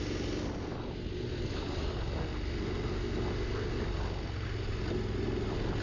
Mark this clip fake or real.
real